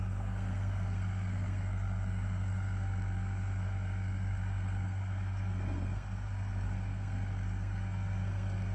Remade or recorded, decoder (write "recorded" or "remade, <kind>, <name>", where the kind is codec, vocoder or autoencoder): remade, codec, SNAC